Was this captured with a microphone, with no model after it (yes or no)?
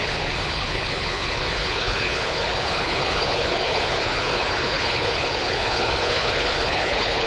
no